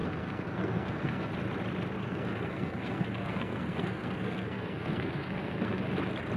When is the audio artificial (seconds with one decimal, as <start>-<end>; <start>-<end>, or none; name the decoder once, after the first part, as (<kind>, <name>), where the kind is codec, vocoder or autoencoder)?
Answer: 0.0-1.3 (codec, SNAC); 2.0-5.8